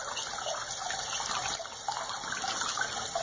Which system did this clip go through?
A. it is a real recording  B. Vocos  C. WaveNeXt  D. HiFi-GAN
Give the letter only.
A